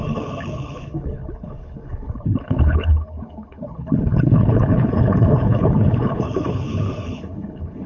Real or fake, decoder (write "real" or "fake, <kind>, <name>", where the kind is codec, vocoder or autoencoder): fake, codec, HILCodec